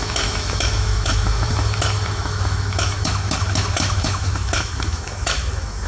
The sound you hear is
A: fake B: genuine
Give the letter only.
A